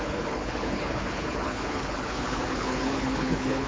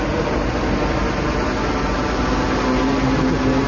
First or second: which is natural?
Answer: second